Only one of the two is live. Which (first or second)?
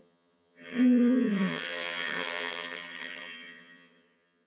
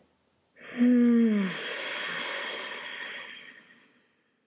second